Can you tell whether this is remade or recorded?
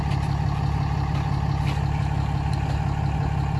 recorded